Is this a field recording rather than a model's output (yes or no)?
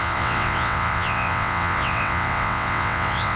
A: no